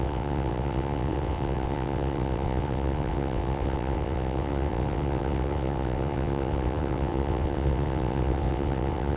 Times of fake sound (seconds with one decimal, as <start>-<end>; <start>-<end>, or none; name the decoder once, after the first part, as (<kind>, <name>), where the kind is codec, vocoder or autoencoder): 0.0-9.2 (vocoder, WaveNeXt)